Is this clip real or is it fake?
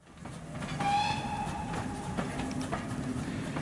real